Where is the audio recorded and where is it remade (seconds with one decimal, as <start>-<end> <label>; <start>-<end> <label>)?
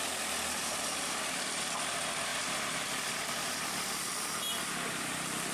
0.0-2.3 remade; 2.3-3.0 recorded; 3.0-5.5 remade